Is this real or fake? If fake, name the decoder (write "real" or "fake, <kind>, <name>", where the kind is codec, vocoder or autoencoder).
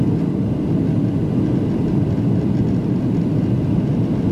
real